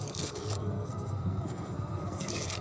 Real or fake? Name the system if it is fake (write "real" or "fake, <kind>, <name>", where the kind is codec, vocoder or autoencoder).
fake, codec, SNAC